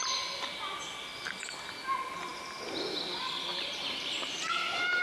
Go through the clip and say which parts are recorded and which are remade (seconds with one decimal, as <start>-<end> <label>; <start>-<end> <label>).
0.0-3.5 recorded; 3.5-4.4 remade; 4.4-5.0 recorded